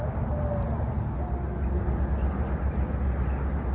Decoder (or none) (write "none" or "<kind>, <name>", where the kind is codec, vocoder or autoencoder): none